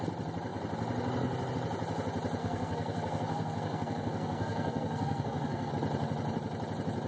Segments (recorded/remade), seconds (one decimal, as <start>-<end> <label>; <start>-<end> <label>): 0.0-2.4 recorded; 2.4-5.7 remade; 5.7-7.1 recorded